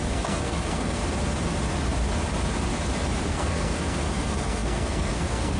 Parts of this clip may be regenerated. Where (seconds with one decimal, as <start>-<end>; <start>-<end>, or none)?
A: 0.0-1.0; 3.3-5.6